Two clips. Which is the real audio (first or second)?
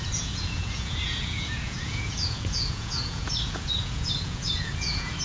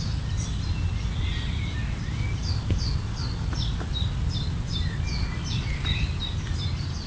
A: second